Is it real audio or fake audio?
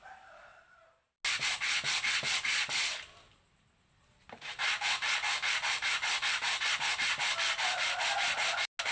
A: real